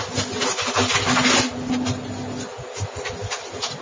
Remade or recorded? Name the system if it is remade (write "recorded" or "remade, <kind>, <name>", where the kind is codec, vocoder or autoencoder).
recorded